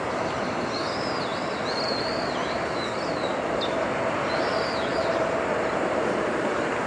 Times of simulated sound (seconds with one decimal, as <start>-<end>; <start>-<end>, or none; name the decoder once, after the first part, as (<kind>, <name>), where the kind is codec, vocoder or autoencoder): none